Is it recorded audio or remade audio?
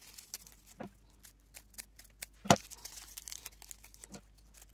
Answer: recorded